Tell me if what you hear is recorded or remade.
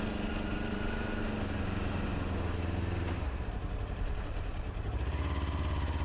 recorded